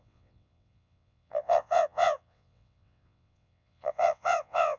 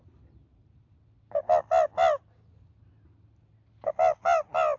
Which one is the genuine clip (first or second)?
second